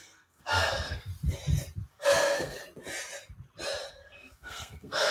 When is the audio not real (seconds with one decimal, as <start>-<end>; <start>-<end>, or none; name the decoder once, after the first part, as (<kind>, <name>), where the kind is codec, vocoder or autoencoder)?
0.0-1.1 (codec, SNAC); 1.9-2.6; 3.9-5.1